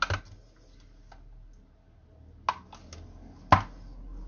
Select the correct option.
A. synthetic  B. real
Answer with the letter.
B